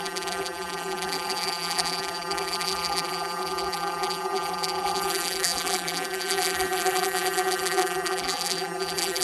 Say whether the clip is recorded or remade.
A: remade